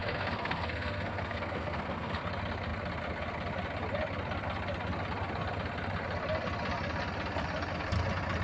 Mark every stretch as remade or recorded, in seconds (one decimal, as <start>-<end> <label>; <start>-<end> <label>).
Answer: 0.0-2.2 remade; 2.2-8.4 recorded